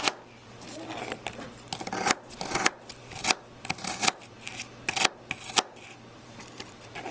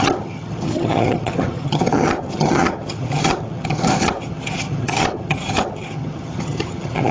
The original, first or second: first